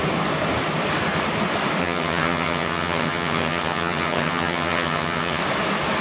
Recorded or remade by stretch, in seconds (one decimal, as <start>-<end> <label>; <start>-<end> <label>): 0.0-1.8 recorded; 1.8-5.4 remade; 5.4-6.0 recorded